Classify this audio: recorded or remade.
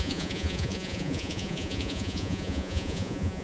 remade